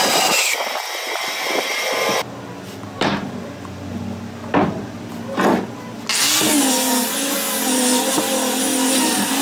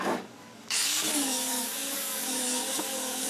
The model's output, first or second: second